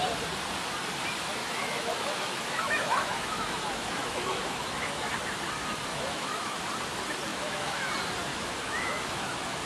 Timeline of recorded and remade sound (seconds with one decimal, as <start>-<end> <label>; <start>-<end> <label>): 0.0-1.4 recorded; 1.4-5.1 remade; 5.1-5.9 recorded; 5.9-6.6 remade; 6.6-7.3 recorded; 7.3-7.9 remade; 7.9-8.3 recorded; 8.3-9.6 remade